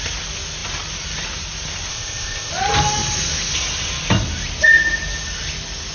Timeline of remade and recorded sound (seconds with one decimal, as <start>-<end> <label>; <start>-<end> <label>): 0.0-1.9 recorded; 1.9-2.5 remade; 2.5-5.9 recorded